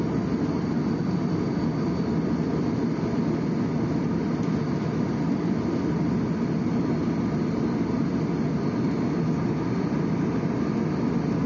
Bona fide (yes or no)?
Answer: yes